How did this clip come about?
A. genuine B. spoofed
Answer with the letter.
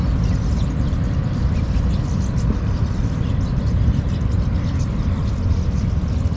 A